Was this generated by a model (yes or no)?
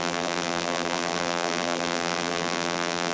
yes